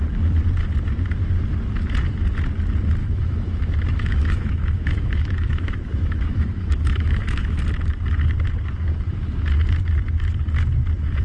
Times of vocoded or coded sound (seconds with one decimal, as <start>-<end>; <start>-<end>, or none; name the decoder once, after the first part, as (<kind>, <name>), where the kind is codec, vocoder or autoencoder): 3.0-7.6 (autoencoder, DAC-VAE)

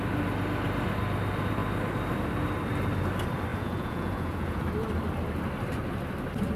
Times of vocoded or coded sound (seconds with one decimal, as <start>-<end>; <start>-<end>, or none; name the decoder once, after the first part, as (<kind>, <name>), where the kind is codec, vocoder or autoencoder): 3.5-4.6 (vocoder, Vocos)

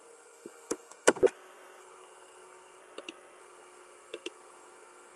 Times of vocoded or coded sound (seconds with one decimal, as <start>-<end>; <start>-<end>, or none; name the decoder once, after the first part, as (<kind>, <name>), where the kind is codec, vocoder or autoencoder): 0.0-1.2 (codec, SNAC); 1.8-2.8; 3.4-5.2